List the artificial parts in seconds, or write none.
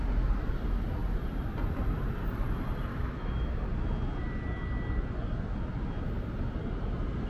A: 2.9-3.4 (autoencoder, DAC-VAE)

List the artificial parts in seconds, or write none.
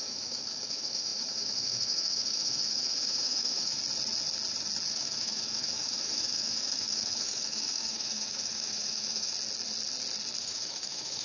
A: 0.0-3.8 (autoencoder, DAC-VAE); 4.9-9.3; 10.4-11.2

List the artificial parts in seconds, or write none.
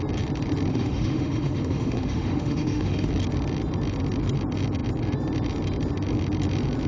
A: 0.7-3.1 (autoencoder, DAC-VAE)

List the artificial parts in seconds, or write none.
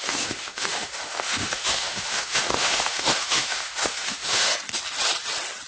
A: 0.0-4.5 (autoencoder, DAC-VAE)